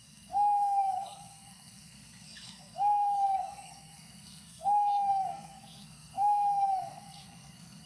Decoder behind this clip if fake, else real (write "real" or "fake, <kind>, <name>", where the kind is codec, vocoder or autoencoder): fake, codec, SNAC